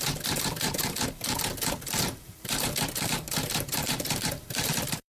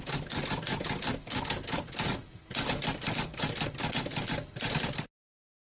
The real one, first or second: second